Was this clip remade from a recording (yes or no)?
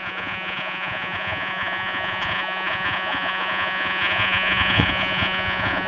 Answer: yes